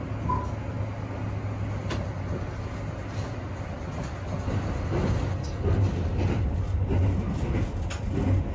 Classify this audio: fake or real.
real